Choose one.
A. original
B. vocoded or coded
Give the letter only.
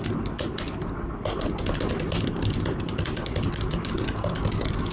A